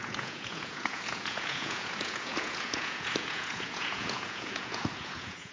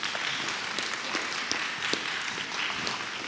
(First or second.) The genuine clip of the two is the second